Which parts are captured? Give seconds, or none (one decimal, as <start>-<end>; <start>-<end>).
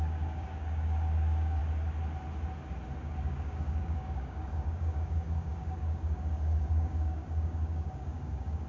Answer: 1.6-3.0